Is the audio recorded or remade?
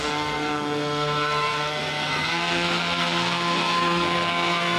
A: remade